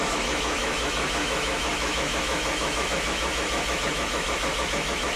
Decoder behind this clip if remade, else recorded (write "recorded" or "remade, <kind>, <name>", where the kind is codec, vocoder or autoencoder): remade, autoencoder, DAC-VAE